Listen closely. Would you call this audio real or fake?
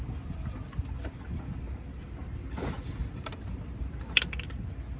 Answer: real